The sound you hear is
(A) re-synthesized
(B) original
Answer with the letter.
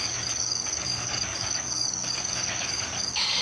A